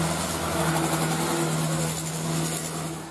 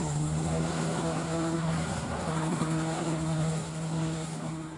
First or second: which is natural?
first